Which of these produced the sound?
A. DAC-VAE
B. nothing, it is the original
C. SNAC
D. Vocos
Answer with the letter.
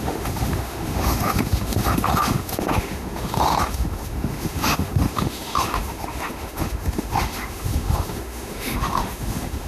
A